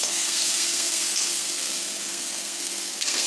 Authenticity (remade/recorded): remade